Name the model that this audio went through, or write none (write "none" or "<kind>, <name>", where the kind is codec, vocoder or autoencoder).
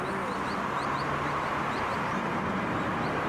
none